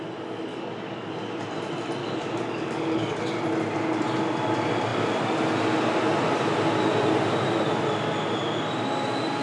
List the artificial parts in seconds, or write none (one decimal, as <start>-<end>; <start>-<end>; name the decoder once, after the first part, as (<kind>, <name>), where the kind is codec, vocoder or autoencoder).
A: 0.5-1.1 (codec, DAC); 2.0-3.2

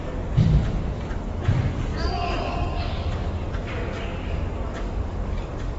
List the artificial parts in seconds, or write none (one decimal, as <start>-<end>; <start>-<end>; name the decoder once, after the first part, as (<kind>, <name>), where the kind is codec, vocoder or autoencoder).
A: 1.9-5.8 (codec, DAC)

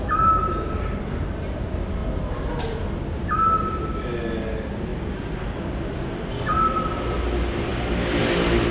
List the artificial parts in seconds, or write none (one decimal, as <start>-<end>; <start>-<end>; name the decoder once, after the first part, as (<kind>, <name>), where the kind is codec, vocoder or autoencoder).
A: none

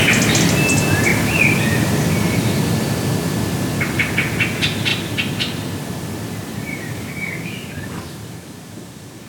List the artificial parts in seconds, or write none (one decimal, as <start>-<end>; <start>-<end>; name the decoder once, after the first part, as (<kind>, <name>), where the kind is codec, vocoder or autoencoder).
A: 6.7-9.3 (codec, DAC)

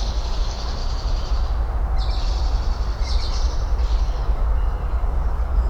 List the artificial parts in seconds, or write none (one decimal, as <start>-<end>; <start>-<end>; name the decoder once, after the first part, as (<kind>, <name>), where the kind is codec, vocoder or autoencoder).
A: 0.0-0.8 (codec, DAC); 4.0-5.7